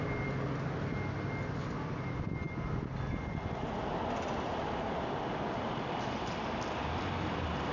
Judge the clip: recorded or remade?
recorded